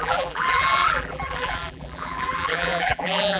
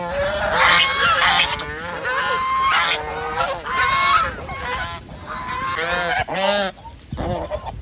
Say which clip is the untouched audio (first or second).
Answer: second